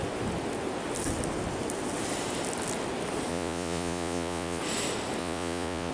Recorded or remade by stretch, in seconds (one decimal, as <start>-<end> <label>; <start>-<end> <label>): 0.0-3.3 recorded; 3.3-4.6 remade; 4.6-5.2 recorded; 5.2-5.9 remade